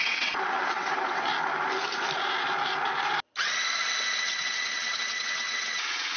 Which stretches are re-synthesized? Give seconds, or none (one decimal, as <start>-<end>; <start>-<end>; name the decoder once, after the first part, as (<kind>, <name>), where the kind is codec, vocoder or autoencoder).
0.0-1.3 (vocoder, WaveNeXt); 4.2-6.2